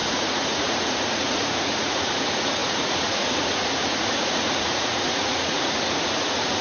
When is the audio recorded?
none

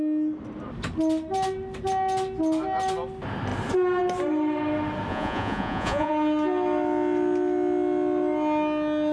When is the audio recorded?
0.0-5.1; 6.1-9.1

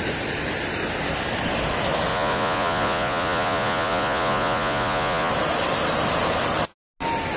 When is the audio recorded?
0.0-2.1; 5.3-7.4